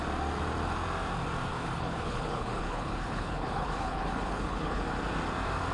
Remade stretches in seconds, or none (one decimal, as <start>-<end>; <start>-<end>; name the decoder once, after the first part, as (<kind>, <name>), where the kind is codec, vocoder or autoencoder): 1.5-4.8 (codec, HILCodec)